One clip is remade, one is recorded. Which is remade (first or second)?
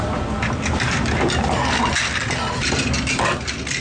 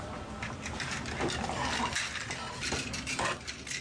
second